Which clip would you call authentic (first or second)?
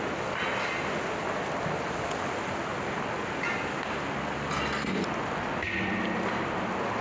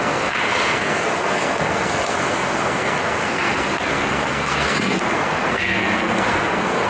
first